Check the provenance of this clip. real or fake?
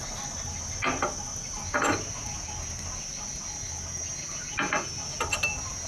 real